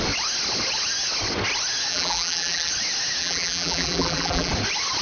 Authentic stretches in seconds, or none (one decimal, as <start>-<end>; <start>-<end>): 0.0-1.9; 2.7-3.2; 4.5-5.0